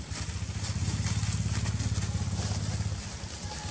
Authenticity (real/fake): real